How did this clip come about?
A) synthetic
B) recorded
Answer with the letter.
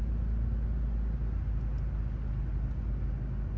B